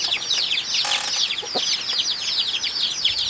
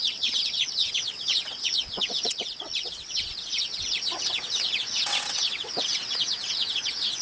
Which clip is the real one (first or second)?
first